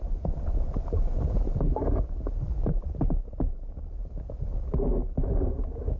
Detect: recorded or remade remade